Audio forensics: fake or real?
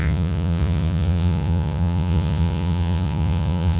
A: fake